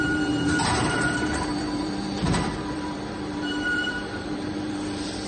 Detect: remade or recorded remade